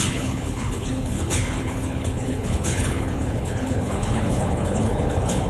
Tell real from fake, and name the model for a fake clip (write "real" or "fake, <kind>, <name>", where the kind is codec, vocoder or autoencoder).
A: fake, codec, HILCodec